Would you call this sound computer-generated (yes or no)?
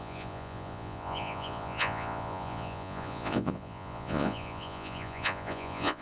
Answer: yes